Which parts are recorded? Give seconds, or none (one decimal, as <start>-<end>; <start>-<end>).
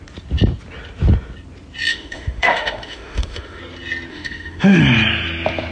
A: 0.0-1.9; 3.6-4.1; 4.8-5.7